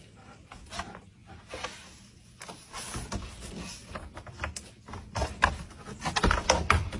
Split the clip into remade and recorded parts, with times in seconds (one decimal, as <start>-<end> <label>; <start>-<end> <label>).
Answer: 0.0-7.0 recorded